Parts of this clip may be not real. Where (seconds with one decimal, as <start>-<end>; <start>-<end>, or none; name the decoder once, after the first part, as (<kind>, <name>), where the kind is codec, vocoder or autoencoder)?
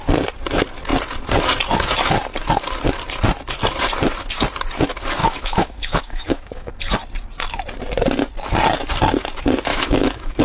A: 5.2-6.7 (autoencoder, DAC-VAE); 9.7-10.4